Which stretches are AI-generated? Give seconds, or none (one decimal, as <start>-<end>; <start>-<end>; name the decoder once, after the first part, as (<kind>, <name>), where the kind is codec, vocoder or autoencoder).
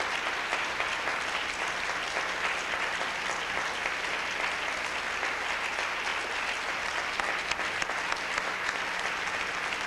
none